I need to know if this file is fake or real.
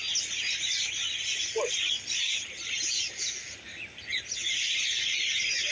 real